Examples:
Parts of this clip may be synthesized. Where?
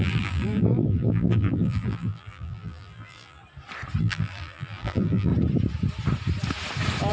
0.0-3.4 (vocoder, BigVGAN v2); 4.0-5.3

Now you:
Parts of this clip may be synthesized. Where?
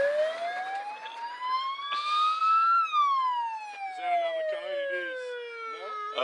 1.1-1.8 (vocoder, BigVGAN v2)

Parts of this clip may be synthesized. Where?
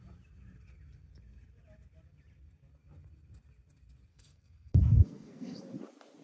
4.1-5.6 (codec, SNAC)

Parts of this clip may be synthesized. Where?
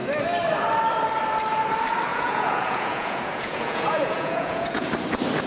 2.1-4.9 (vocoder, Vocos)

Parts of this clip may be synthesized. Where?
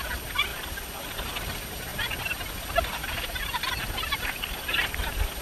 none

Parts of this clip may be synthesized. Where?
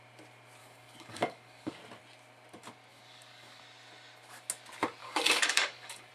0.6-1.8 (codec, DAC); 2.9-3.6; 5.0-6.1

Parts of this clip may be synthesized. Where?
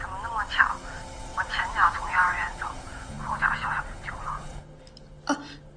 1.3-4.8 (vocoder, Vocos)